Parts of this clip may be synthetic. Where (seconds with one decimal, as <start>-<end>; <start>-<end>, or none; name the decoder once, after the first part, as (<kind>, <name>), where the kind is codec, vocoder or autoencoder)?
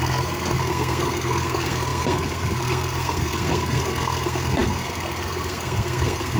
0.0-6.4 (codec, SNAC)